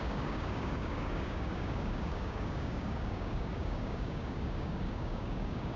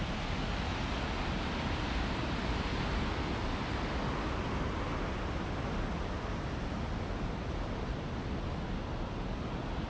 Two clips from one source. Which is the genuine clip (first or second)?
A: second